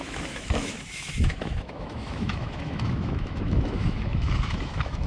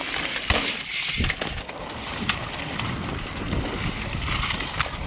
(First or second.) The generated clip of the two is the first